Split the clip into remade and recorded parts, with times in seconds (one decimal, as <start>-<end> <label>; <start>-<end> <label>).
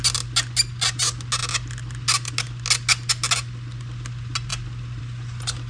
0.0-5.7 recorded